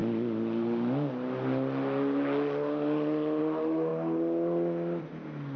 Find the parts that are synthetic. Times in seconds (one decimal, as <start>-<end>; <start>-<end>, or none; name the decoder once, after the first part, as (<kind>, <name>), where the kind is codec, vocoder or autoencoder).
none